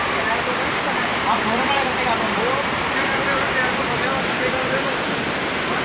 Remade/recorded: recorded